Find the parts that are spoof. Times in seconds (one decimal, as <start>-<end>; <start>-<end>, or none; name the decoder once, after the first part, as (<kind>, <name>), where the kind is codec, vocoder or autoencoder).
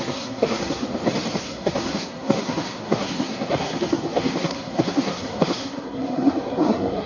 0.0-0.8 (codec, SNAC); 1.4-7.1